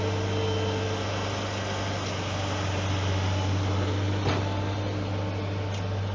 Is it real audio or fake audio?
real